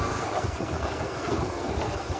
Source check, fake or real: fake